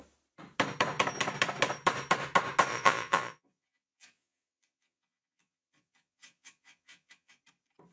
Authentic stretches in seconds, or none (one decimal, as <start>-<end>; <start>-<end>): 0.0-2.7; 7.4-7.9